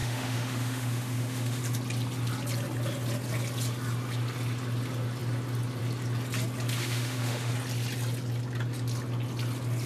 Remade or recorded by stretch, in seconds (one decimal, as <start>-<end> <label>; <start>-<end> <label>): 0.0-1.6 remade; 1.6-6.8 recorded; 6.8-7.5 remade; 7.5-9.9 recorded